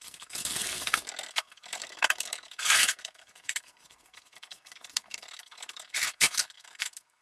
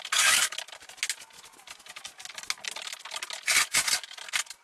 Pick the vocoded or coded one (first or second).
first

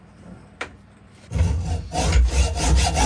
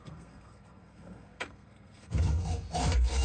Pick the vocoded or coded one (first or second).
second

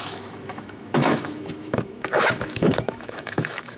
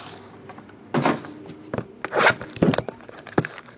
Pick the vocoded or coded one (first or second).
first